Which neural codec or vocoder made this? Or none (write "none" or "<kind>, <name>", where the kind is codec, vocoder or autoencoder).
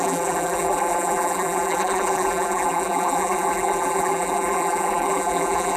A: vocoder, BigVGAN v2